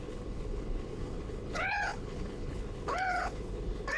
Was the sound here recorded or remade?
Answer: remade